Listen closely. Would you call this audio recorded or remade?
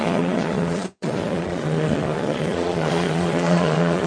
remade